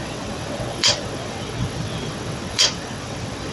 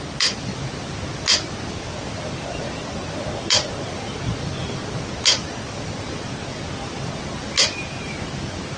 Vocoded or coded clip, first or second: first